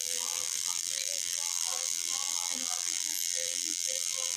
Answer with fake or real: fake